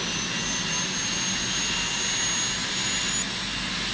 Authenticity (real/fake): real